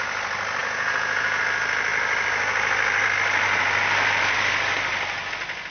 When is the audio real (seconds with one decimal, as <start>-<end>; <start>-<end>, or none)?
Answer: 0.0-0.6; 1.4-5.7